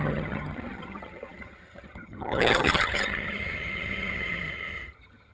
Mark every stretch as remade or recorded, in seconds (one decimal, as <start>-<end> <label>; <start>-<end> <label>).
0.0-5.3 remade